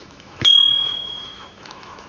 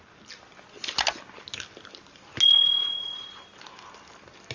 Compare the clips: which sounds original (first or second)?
second